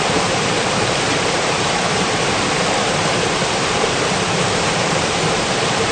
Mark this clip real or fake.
fake